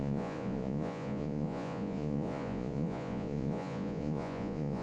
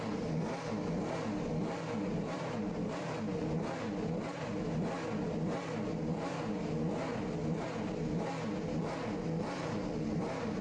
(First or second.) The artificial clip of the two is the first